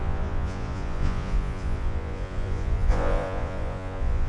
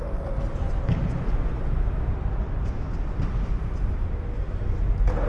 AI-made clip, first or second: first